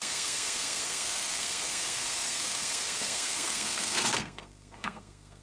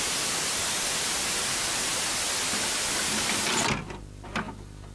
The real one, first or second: second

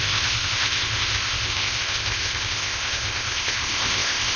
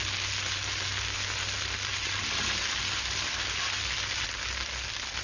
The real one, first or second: second